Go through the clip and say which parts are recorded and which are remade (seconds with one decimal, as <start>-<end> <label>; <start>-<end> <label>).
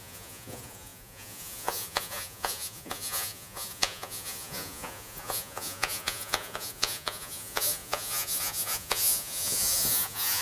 0.0-10.4 remade